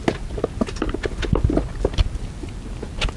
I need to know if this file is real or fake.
real